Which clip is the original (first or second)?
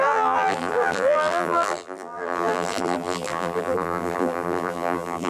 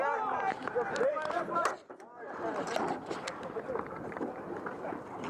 second